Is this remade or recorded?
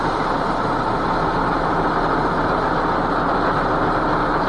recorded